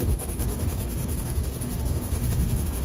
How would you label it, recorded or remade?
remade